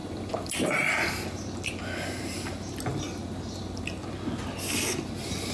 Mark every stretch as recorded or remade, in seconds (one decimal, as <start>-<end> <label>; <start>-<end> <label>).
0.0-1.1 remade; 1.1-5.5 recorded